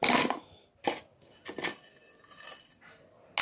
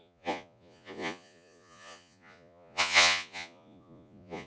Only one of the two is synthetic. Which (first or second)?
second